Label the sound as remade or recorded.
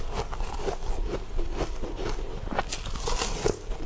recorded